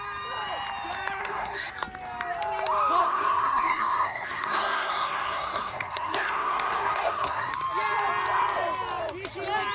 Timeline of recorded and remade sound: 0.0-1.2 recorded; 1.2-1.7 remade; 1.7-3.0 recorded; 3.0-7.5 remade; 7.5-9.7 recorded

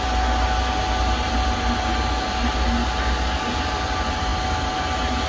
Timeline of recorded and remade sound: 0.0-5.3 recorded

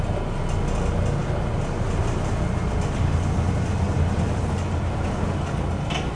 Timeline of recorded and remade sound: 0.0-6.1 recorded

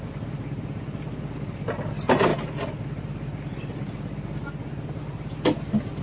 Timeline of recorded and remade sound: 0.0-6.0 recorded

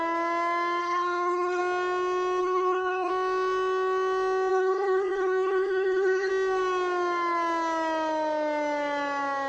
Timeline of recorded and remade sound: 0.0-0.8 recorded; 0.8-1.6 remade; 1.6-2.4 recorded; 2.4-3.1 remade; 3.1-4.5 recorded; 4.5-6.3 remade; 6.3-9.5 recorded